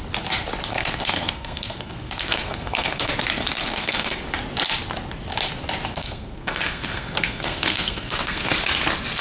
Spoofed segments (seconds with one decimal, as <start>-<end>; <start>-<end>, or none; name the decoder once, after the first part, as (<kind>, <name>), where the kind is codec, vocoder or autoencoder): 0.7-3.1 (codec, SNAC); 3.6-4.2; 5.9-8.5